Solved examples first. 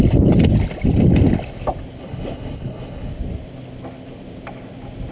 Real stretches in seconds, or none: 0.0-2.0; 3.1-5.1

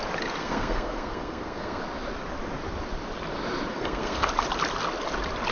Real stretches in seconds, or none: 0.0-0.4; 1.8-3.7; 4.3-5.5

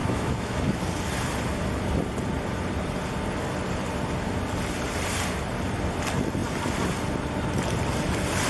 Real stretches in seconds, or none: 0.8-8.5

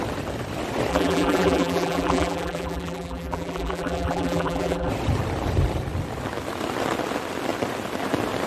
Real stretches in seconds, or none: 0.0-0.9; 4.9-8.5

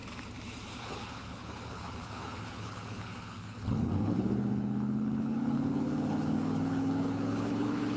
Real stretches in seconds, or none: 0.0-0.8

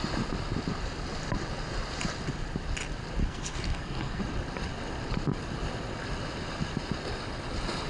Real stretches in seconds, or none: 0.0-3.2; 4.2-7.9

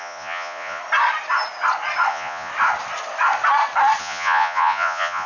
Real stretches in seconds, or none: 0.8-2.1; 2.5-4.0

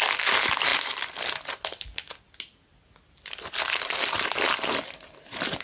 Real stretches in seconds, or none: 0.0-5.6